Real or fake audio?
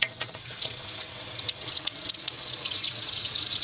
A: fake